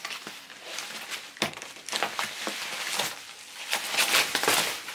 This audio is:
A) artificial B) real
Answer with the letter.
B